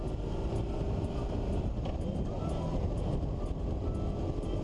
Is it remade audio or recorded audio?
recorded